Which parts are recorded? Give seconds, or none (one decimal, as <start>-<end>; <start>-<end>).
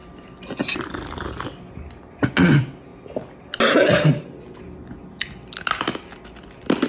0.0-6.9